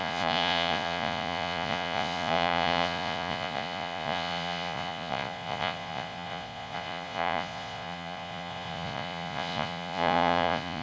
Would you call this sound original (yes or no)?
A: no